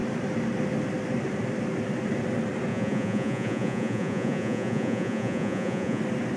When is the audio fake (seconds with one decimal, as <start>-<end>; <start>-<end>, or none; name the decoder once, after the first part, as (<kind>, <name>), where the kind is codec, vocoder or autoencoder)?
2.7-6.0 (vocoder, Vocos)